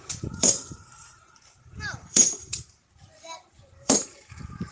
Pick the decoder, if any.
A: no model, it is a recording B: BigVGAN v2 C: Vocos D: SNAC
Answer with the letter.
B